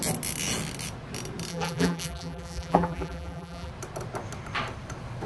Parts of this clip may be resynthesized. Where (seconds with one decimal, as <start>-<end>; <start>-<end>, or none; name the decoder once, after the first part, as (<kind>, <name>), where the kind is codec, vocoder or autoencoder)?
1.5-3.7 (vocoder, BigVGAN v2)